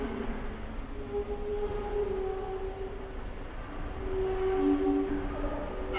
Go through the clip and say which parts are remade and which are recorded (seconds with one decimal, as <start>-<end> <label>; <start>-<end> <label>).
0.0-6.0 recorded